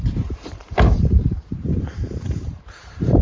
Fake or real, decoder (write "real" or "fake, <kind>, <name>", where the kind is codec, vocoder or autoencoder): fake, vocoder, BigVGAN v2